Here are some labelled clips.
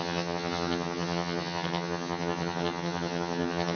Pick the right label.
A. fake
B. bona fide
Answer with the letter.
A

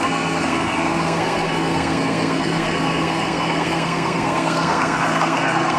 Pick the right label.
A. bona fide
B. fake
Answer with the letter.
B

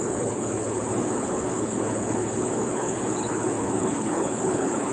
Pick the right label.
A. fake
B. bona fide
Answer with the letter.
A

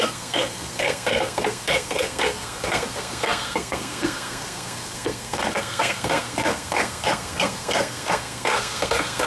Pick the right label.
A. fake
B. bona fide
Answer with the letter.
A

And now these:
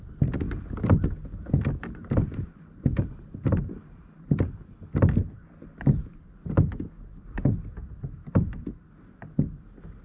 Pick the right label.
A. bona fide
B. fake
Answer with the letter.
A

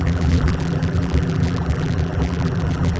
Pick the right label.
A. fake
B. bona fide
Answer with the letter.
A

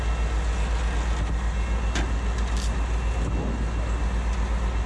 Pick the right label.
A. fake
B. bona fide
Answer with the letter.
B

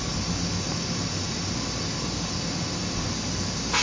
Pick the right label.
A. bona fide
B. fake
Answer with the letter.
A